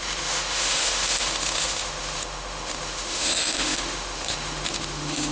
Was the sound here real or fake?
fake